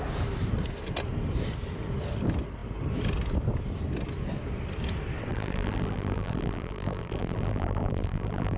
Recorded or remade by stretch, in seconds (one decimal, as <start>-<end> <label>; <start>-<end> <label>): 0.0-5.3 recorded; 5.3-8.6 remade